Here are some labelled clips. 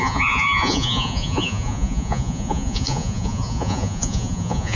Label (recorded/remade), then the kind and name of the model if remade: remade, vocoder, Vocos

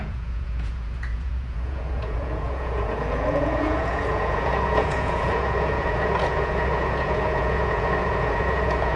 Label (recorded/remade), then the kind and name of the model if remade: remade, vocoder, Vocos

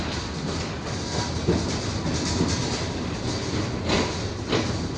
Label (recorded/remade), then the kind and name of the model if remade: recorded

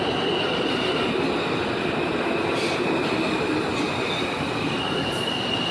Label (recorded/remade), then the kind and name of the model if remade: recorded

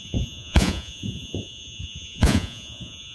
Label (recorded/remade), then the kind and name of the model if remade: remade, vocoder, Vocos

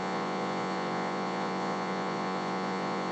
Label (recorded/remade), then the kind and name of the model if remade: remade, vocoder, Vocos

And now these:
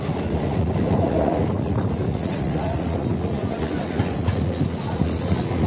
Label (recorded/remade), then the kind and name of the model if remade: remade, vocoder, Vocos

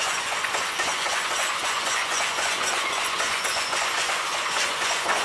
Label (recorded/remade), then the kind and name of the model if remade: remade, vocoder, Vocos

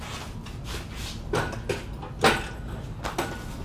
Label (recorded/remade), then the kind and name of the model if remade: recorded